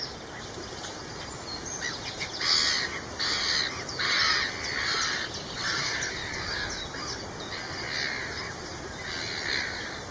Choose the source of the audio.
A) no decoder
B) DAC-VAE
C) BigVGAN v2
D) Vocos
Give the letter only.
A